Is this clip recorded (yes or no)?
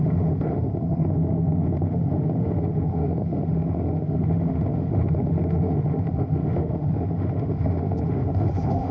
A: no